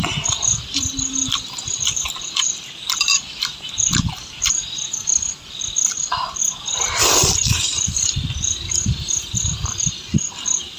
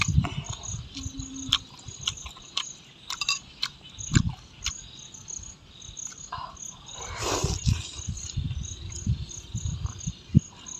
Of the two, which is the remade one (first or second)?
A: first